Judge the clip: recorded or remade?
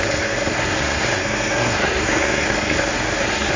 remade